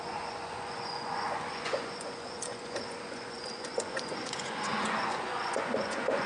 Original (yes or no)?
no